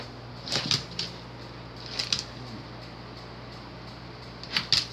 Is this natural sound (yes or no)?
yes